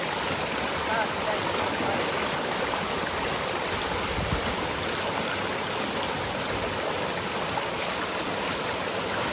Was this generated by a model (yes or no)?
no